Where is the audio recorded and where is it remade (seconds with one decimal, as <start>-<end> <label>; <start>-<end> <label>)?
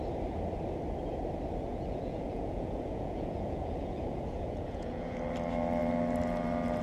0.0-1.7 recorded; 1.7-5.2 remade; 5.2-6.8 recorded